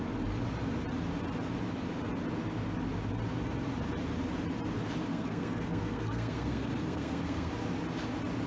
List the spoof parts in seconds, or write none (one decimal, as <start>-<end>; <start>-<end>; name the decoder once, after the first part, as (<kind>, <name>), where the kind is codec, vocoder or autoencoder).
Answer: 5.1-7.5 (codec, SNAC)